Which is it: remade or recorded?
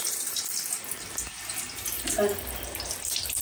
recorded